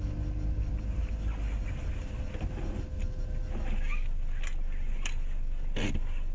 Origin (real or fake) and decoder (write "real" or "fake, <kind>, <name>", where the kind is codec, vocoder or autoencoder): real